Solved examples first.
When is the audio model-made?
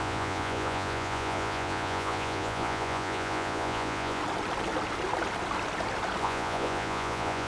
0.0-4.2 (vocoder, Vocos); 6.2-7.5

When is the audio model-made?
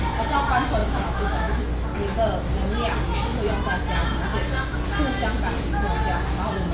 0.8-1.6 (autoencoder, DAC-VAE)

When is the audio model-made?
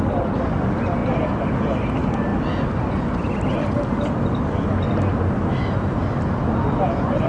none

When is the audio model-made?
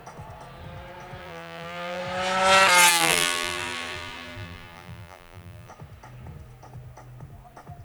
1.2-2.0 (vocoder, BigVGAN v2); 2.9-5.7